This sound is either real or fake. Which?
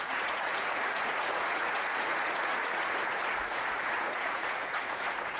fake